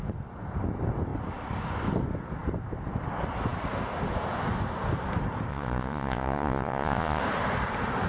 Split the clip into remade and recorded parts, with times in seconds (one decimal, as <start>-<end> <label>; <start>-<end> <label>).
0.0-5.5 recorded; 5.5-7.2 remade; 7.2-8.1 recorded